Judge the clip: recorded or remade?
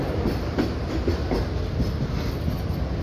recorded